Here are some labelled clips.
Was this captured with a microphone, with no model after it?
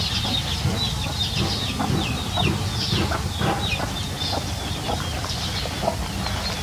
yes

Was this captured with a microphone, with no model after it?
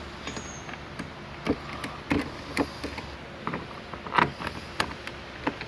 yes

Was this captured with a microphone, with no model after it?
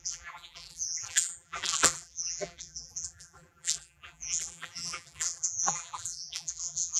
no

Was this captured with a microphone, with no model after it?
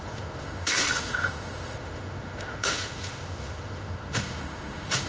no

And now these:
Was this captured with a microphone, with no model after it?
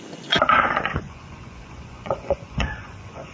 no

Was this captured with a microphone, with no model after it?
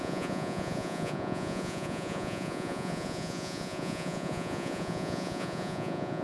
no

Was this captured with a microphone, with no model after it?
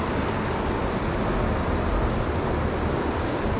yes